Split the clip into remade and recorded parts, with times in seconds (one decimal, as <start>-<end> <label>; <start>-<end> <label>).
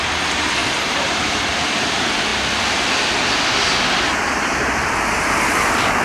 0.0-0.6 recorded; 0.6-1.4 remade; 1.4-6.0 recorded